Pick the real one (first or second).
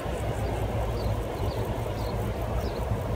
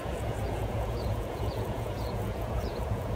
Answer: first